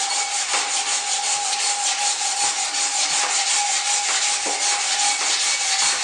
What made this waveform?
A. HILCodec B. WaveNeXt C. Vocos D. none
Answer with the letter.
D